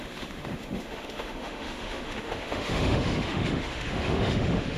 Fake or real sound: fake